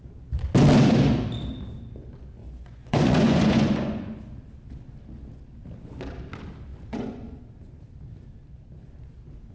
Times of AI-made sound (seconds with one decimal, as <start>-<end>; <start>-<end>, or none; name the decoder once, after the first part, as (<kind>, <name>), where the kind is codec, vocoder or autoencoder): 2.4-4.2 (vocoder, Vocos); 6.7-7.4

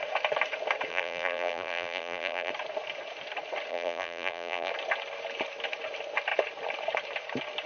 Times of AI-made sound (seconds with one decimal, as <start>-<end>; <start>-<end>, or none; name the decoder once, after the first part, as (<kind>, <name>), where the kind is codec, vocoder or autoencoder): 0.9-2.5 (vocoder, BigVGAN v2); 3.7-4.7